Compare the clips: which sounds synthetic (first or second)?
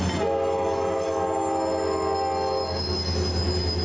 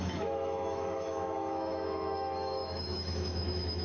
second